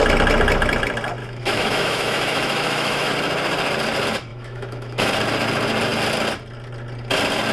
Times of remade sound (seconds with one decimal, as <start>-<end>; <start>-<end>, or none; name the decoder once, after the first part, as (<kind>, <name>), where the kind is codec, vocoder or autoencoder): 1.2-3.1 (autoencoder, DAC-VAE); 4.3-5.1